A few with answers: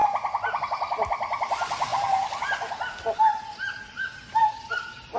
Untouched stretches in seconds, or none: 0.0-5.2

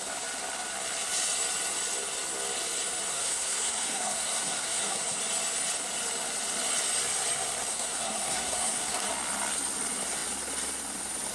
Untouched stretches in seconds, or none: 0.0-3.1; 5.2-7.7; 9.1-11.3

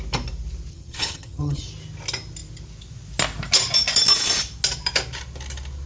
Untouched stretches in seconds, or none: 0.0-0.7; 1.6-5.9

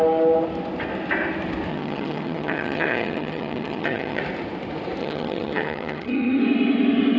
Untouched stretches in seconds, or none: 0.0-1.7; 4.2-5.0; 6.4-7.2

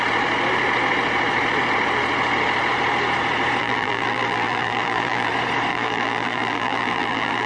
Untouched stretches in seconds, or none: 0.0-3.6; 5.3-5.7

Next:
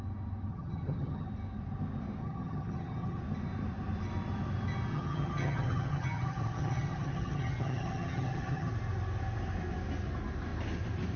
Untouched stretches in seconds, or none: 0.0-0.5; 1.3-2.2; 3.2-4.9; 8.7-11.2

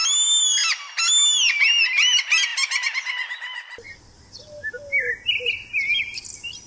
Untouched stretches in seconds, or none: 0.0-6.7

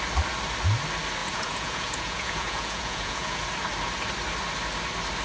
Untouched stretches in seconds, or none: 0.0-1.2; 3.4-5.2